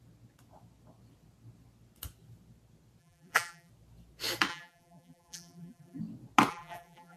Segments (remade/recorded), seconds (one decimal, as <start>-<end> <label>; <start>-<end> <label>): 0.0-3.0 recorded; 3.0-3.7 remade; 3.7-4.5 recorded; 4.5-6.0 remade; 6.0-6.5 recorded; 6.5-7.2 remade